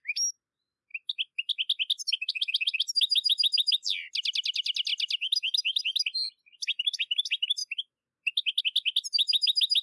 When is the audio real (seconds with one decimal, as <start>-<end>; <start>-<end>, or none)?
0.0-9.8